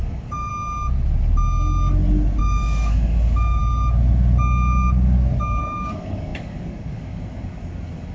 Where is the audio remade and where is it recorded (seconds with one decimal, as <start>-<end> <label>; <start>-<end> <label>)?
0.0-0.5 remade; 0.5-2.4 recorded; 2.4-3.6 remade; 3.6-5.6 recorded; 5.6-8.1 remade

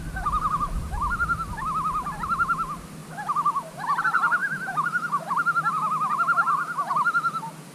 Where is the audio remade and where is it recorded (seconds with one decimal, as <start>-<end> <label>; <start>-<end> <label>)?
0.0-7.7 recorded